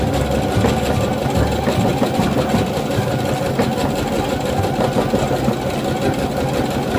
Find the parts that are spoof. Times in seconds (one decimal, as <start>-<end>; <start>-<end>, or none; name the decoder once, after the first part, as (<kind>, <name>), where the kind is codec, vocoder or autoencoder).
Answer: none